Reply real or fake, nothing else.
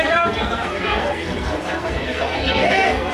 fake